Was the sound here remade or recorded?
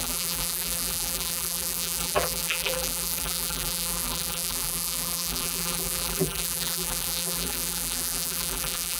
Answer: remade